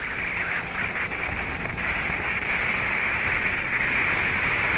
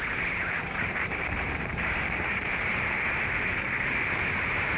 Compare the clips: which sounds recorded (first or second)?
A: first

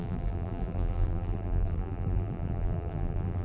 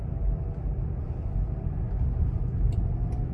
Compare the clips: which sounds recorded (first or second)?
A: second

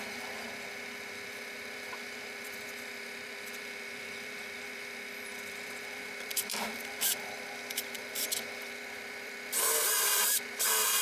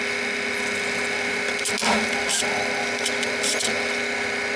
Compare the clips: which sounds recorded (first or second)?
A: second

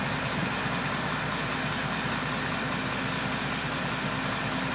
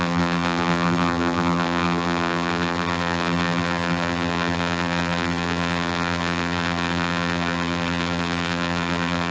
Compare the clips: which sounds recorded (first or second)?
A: first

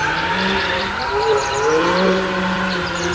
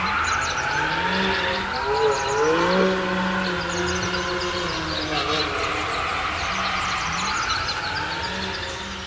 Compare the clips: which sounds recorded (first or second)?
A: second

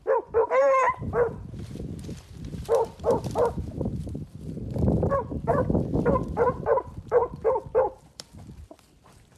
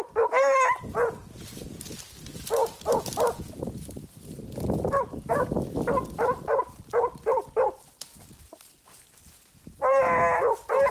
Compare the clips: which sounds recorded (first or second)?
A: second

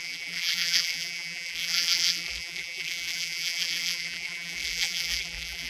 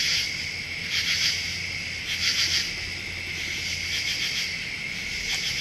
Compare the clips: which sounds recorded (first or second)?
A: second